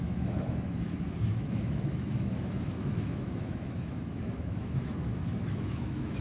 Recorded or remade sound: remade